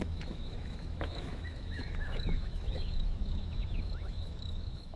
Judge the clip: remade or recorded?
remade